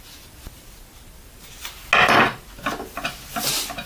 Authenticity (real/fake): real